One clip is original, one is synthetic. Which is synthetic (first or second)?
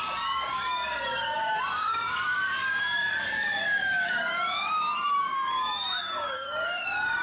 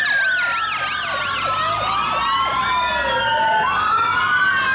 first